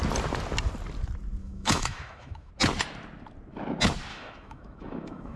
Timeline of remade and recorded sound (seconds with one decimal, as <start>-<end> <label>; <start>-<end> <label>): 0.0-1.4 recorded; 1.4-2.5 remade; 2.5-4.1 recorded; 4.1-5.4 remade